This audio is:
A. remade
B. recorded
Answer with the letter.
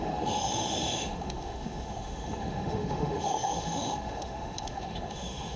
A